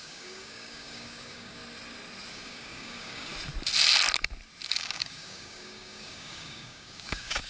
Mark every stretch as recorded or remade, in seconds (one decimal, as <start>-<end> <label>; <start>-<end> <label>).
0.0-1.6 remade; 1.6-2.3 recorded; 2.3-3.3 remade; 3.3-4.7 recorded; 4.7-7.5 remade